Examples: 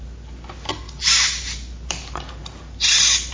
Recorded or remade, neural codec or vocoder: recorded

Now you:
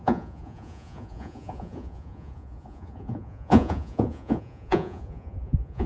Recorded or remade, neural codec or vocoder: remade, vocoder, Vocos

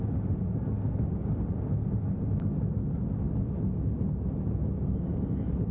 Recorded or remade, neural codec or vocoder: recorded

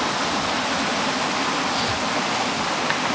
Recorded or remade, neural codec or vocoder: recorded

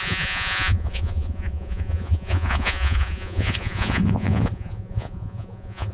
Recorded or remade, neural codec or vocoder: remade, vocoder, Vocos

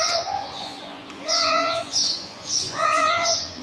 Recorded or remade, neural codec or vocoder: remade, vocoder, Vocos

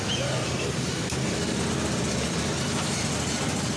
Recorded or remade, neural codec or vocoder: recorded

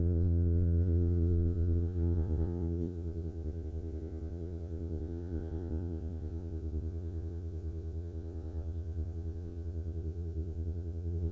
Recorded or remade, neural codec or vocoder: remade, vocoder, Vocos